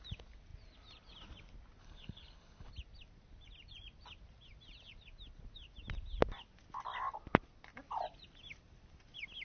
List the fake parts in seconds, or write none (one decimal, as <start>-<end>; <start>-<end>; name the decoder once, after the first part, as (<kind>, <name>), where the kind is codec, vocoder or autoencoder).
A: 1.8-2.7 (codec, HILCodec)